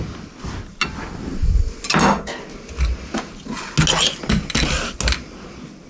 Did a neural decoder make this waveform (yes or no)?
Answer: no